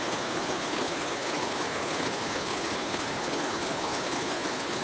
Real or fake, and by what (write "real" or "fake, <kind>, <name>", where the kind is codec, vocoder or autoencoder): fake, codec, HILCodec